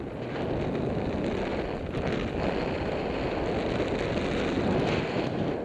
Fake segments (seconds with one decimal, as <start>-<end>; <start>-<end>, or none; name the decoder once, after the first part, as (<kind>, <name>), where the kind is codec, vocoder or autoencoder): none